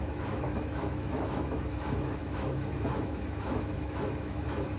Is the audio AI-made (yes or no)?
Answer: yes